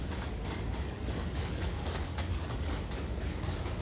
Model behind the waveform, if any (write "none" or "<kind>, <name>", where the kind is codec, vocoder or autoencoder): codec, DAC